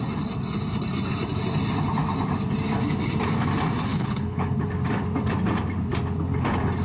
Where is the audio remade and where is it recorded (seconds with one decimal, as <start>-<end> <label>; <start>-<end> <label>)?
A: 0.0-3.9 recorded; 3.9-4.6 remade; 4.6-6.8 recorded